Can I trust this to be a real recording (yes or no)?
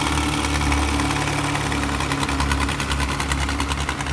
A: yes